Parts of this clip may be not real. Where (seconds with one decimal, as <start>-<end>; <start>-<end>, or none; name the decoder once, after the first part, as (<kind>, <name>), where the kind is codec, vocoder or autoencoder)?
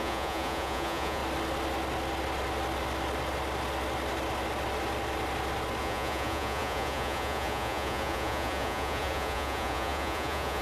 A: 0.0-1.2 (vocoder, Vocos); 5.8-10.6